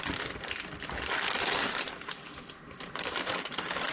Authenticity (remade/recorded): recorded